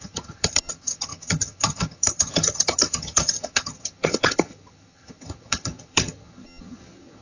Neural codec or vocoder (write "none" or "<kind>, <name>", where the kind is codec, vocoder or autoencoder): vocoder, HiFi-GAN